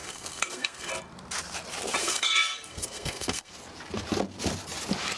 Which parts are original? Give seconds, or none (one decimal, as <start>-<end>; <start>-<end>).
0.9-2.0; 3.5-5.2